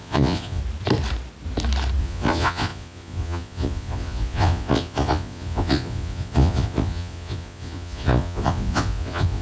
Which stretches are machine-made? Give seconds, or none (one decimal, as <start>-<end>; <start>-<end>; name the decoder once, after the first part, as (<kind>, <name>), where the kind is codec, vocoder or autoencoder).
0.0-0.6 (vocoder, Vocos); 2.0-9.4

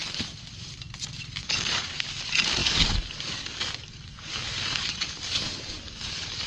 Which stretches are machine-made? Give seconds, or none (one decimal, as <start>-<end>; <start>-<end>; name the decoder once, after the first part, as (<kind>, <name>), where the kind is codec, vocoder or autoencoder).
1.4-2.2 (codec, DAC); 2.6-6.5

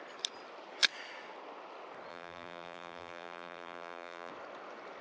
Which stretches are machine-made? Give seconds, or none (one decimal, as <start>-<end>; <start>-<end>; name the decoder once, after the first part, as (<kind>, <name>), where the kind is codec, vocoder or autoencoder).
2.1-4.3 (vocoder, BigVGAN v2)

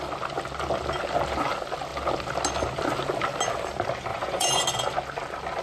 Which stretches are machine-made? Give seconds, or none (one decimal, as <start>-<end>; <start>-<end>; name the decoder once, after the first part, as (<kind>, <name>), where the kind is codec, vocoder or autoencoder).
4.1-4.6 (vocoder, Vocos)